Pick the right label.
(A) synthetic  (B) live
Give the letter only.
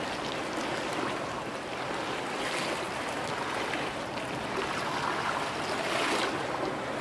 B